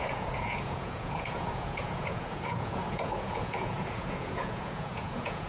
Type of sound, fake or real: fake